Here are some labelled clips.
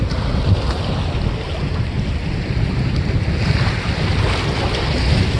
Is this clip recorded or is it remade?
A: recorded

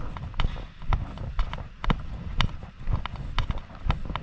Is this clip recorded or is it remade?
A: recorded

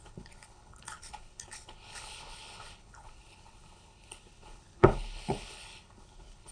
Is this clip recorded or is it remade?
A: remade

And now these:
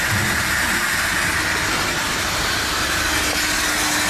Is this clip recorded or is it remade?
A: recorded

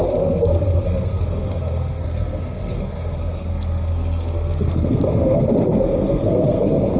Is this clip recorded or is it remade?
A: remade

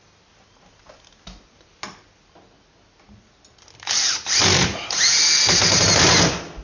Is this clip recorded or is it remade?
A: recorded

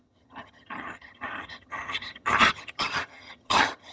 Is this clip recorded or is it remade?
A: remade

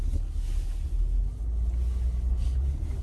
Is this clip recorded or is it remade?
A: recorded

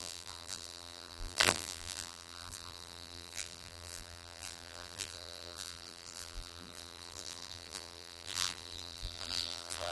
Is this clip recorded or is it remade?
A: remade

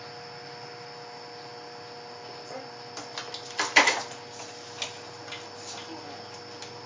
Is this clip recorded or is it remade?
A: recorded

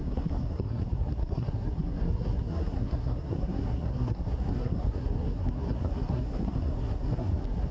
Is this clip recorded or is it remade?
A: remade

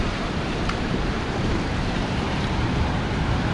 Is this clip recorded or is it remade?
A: remade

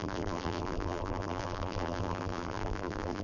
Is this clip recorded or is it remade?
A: remade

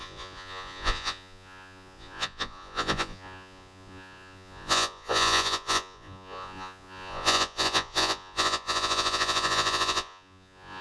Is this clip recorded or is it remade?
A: remade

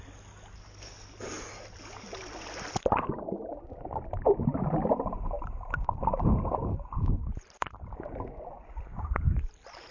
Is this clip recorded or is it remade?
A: recorded